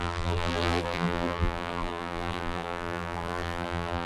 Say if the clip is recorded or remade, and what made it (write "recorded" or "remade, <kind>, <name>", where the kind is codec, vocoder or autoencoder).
remade, vocoder, BigVGAN v2